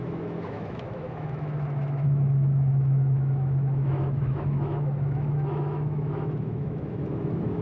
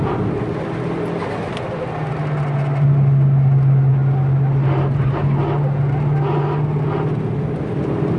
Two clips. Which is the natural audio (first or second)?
second